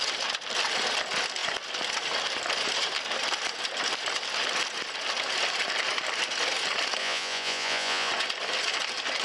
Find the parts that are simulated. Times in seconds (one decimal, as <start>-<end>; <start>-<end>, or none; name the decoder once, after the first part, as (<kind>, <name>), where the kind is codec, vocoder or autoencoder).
7.0-8.1 (vocoder, Vocos)